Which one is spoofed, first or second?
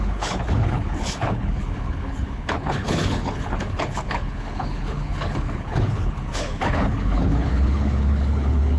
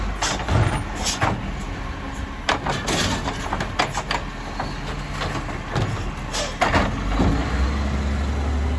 first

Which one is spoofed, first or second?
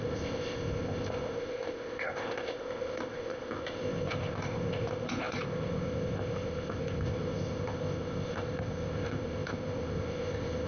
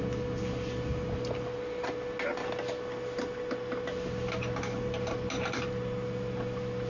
first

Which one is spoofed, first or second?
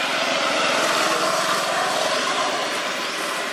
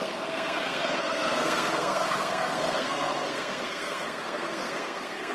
second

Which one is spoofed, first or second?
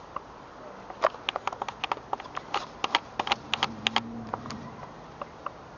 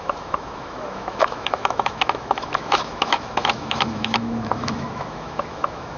second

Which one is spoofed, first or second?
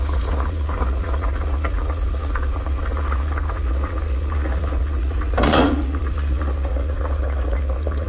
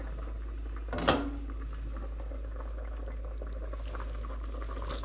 first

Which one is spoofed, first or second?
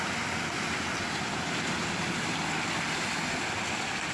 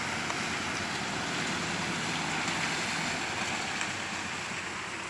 first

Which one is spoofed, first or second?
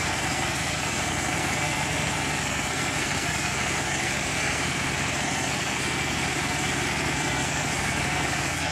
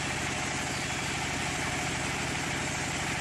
first